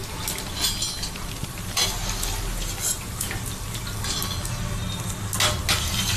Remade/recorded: recorded